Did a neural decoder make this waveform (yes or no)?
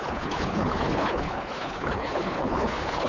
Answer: yes